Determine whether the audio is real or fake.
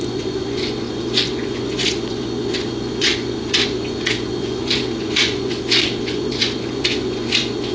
fake